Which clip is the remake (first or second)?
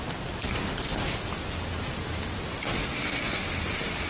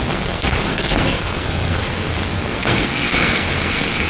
second